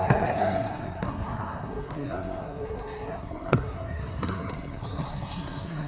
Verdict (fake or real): fake